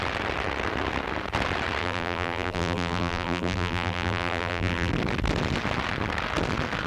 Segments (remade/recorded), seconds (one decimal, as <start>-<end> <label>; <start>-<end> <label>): 0.0-1.8 recorded; 1.8-4.9 remade; 4.9-6.9 recorded